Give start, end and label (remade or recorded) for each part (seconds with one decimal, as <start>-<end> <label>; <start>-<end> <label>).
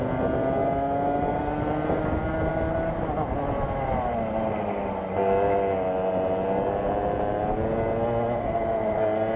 0.0-9.4 recorded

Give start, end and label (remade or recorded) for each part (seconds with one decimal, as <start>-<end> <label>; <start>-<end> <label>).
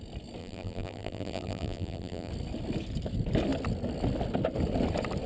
0.0-0.4 recorded; 0.4-2.3 remade; 2.3-5.3 recorded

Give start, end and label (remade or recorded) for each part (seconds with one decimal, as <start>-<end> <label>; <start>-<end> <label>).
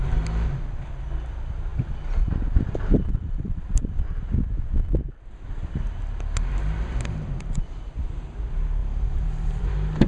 0.0-1.7 recorded; 1.7-3.9 remade; 3.9-8.8 recorded; 8.8-9.7 remade; 9.7-10.1 recorded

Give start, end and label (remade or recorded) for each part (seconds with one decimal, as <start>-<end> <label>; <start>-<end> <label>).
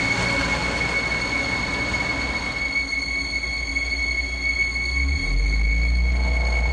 0.0-6.7 recorded